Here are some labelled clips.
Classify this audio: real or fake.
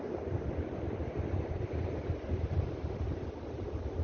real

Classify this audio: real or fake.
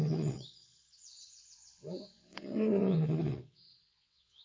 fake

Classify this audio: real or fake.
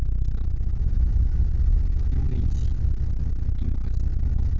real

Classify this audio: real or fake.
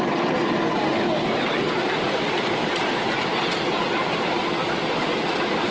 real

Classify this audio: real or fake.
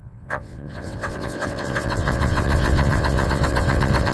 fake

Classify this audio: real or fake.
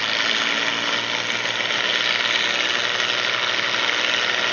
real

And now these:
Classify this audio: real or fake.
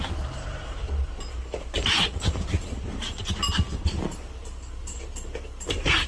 real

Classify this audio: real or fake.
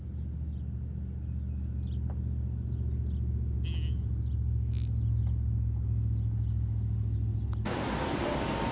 real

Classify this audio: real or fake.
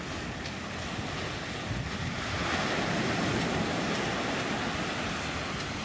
real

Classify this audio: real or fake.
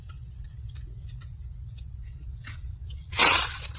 fake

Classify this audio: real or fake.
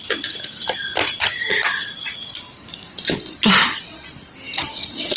real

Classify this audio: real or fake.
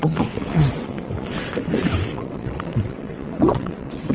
fake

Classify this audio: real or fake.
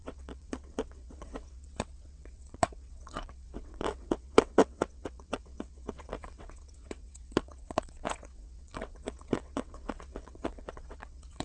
fake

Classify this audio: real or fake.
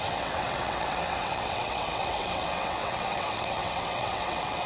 fake